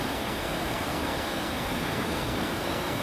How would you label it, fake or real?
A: fake